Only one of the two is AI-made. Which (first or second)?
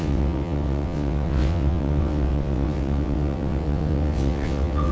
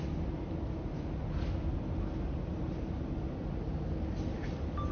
first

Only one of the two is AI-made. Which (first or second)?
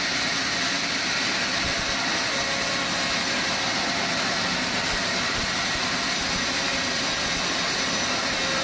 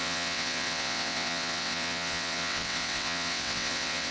second